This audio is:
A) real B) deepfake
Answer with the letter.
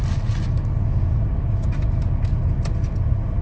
A